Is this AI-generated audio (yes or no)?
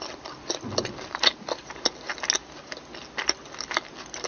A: no